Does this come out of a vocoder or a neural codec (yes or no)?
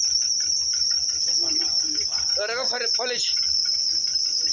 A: no